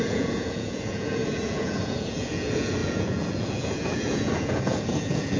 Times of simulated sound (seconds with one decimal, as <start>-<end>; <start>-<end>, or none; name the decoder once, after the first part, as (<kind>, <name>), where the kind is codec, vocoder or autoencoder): 0.0-5.4 (vocoder, Vocos)